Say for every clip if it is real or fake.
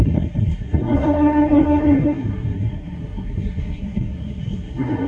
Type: fake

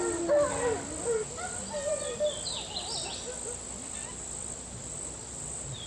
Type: real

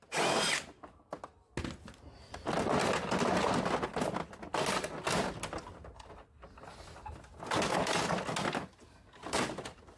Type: real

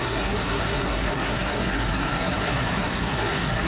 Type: fake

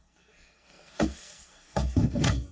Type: fake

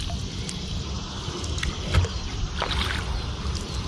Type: real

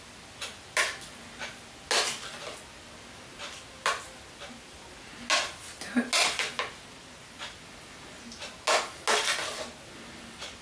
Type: real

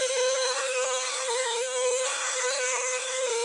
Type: fake